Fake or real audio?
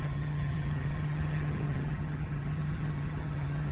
fake